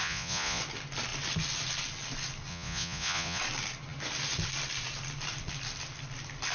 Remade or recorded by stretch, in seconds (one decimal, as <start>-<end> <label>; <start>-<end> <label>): 0.0-0.6 remade; 0.6-2.5 recorded; 2.5-3.4 remade; 3.4-6.5 recorded